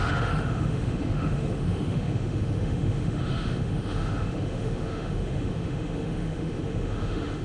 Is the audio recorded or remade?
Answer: remade